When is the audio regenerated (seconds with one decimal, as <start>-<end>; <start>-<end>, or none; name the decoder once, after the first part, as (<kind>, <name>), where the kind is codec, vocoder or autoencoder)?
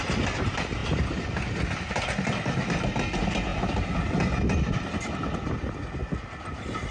none